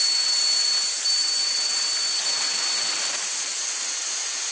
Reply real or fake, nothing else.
real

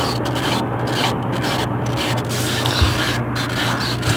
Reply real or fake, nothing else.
real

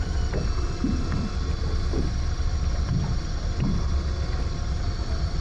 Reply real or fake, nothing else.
fake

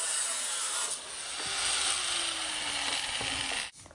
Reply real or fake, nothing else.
real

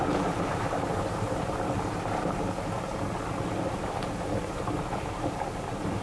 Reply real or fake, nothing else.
fake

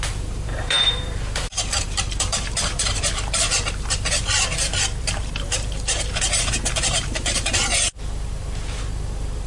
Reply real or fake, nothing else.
fake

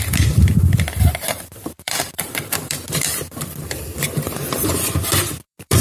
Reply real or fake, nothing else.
fake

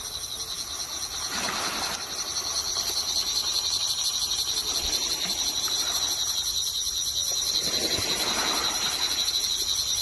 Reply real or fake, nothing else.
fake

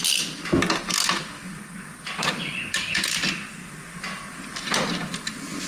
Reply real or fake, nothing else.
real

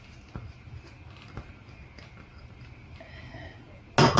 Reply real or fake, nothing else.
real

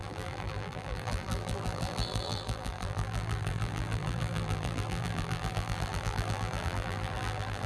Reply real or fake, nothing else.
fake